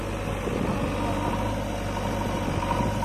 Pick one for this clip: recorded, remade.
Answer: recorded